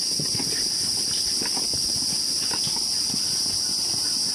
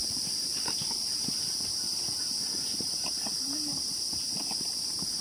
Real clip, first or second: first